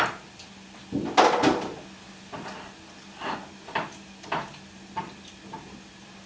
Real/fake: real